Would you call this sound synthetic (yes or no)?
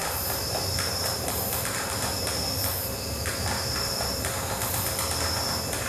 yes